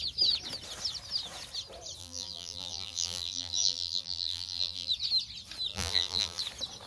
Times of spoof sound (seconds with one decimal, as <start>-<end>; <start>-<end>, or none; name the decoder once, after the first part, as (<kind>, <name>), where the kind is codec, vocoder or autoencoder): 2.0-4.9 (vocoder, BigVGAN v2); 5.7-6.4